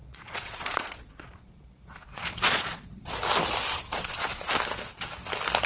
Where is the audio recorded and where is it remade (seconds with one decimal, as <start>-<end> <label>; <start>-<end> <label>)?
0.0-3.0 remade; 3.0-3.9 recorded; 3.9-4.5 remade; 4.5-5.7 recorded